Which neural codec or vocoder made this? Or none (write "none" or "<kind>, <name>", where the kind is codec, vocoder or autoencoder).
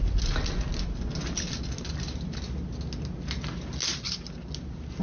none